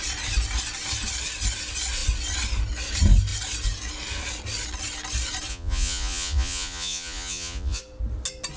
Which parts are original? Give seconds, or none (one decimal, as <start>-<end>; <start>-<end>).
0.0-5.5; 7.8-8.6